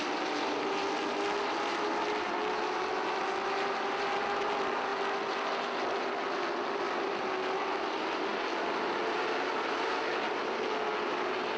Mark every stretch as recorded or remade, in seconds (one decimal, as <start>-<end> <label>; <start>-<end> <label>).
0.0-11.6 recorded